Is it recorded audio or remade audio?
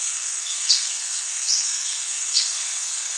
remade